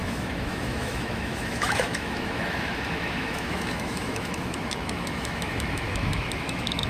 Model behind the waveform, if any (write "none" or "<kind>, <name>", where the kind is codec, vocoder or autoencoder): autoencoder, DAC-VAE